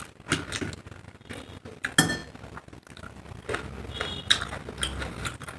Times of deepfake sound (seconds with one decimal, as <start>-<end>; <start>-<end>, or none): none